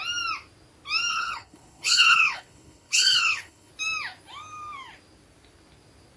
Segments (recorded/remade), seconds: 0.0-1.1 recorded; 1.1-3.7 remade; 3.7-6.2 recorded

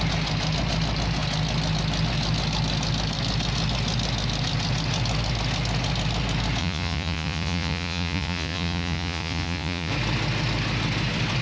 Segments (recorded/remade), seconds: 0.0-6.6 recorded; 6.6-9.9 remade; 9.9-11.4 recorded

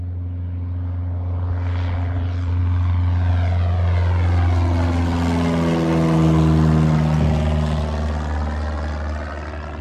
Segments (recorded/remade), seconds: 0.0-9.8 recorded

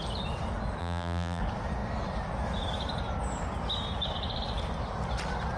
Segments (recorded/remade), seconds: 0.0-0.8 recorded; 0.8-1.4 remade; 1.4-5.6 recorded

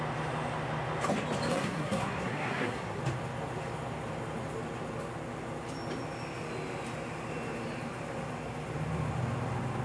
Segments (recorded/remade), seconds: 0.0-1.5 recorded; 1.5-3.0 remade; 3.0-9.8 recorded

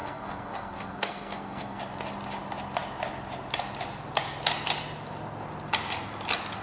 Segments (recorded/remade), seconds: 0.0-1.8 remade; 1.8-6.6 recorded